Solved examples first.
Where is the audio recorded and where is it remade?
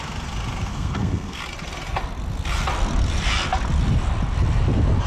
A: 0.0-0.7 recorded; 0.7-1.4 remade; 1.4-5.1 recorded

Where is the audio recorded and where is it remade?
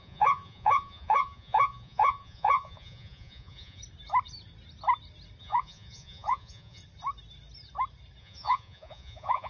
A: 0.0-3.8 remade; 3.8-5.4 recorded; 5.4-6.8 remade; 6.8-8.2 recorded; 8.2-9.5 remade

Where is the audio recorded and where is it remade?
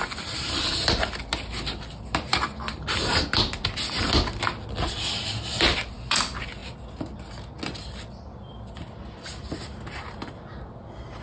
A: 0.0-11.2 recorded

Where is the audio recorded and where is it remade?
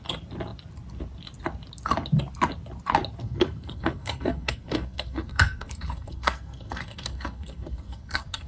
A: 0.0-3.2 recorded; 3.2-8.5 remade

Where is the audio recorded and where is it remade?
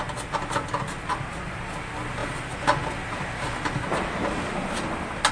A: 0.0-5.3 recorded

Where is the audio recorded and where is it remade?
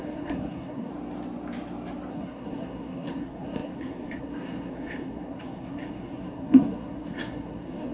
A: 0.0-0.9 remade; 0.9-2.1 recorded; 2.1-7.9 remade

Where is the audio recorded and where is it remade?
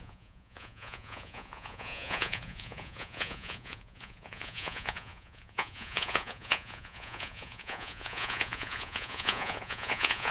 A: 0.0-10.3 remade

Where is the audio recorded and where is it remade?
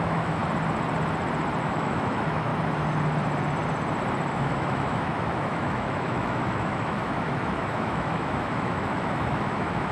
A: 0.0-0.4 remade; 0.4-1.6 recorded; 1.6-2.5 remade; 2.5-4.3 recorded; 4.3-9.9 remade